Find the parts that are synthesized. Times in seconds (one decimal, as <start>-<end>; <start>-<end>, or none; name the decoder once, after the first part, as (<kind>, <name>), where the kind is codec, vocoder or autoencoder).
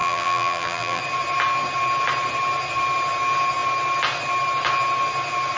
0.0-1.0 (vocoder, BigVGAN v2)